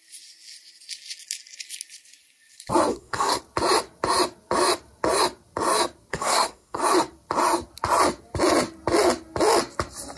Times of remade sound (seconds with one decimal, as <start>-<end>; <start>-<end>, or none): 2.9-3.4; 6.1-6.8